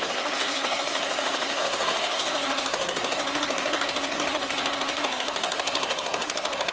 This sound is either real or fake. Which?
fake